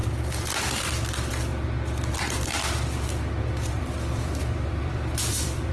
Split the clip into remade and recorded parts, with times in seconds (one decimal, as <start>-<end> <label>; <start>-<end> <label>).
0.0-0.8 recorded; 0.8-1.5 remade; 1.5-3.8 recorded; 3.8-5.7 remade